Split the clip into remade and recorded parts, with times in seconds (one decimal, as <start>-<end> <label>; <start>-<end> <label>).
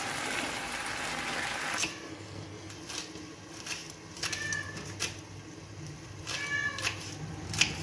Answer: 0.0-2.1 recorded; 2.1-2.7 remade; 2.7-7.8 recorded